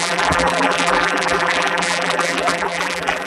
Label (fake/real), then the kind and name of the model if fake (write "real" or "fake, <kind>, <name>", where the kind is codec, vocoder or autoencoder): fake, vocoder, BigVGAN v2